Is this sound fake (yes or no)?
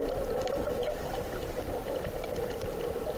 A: no